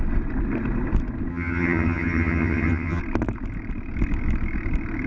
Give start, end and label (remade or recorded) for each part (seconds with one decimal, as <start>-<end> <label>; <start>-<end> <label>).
0.0-1.3 recorded; 1.3-3.0 remade; 3.0-5.1 recorded